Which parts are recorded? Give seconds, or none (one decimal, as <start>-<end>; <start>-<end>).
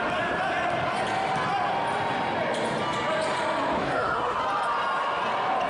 0.0-3.8; 4.4-5.7